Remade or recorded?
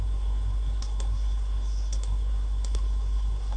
remade